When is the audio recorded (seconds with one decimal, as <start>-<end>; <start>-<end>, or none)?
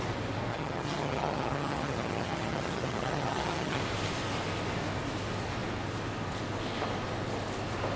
0.0-0.5; 3.8-8.0